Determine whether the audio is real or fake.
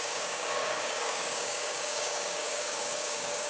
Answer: fake